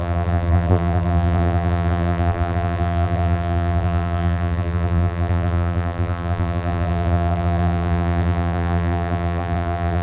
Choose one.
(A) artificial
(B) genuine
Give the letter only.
A